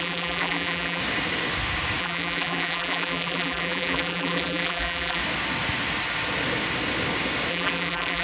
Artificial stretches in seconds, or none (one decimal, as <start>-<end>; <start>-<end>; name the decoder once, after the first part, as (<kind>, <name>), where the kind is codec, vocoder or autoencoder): 0.0-1.0 (vocoder, BigVGAN v2); 2.0-5.2; 7.5-8.2